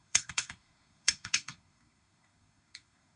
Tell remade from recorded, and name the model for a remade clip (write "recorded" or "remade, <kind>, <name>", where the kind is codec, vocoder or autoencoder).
remade, codec, SNAC